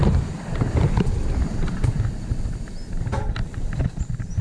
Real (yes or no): yes